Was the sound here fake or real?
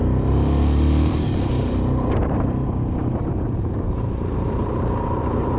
fake